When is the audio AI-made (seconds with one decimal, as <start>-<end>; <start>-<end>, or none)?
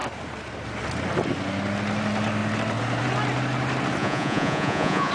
4.0-5.1